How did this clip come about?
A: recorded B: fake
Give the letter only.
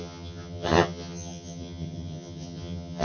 B